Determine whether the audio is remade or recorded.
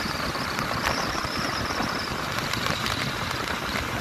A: remade